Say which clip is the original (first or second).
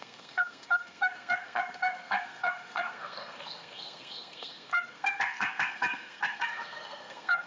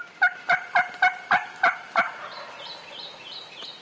second